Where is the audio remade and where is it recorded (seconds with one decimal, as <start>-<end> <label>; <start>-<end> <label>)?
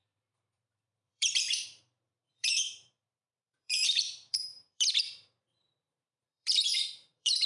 0.0-7.5 remade